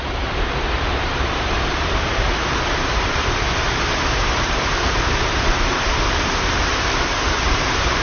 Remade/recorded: remade